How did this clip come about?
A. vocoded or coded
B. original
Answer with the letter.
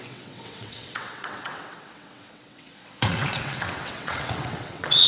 A